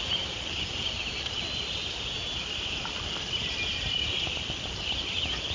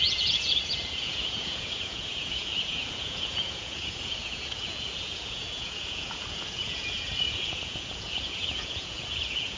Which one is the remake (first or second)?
second